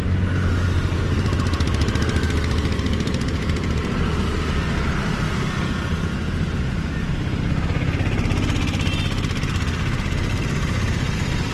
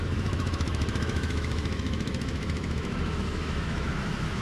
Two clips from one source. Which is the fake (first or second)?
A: second